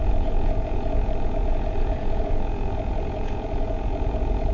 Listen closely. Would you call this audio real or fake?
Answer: fake